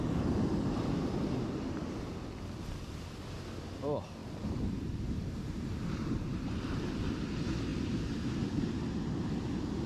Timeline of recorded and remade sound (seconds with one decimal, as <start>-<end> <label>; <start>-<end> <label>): 0.0-4.2 recorded; 4.2-6.5 remade; 6.5-9.9 recorded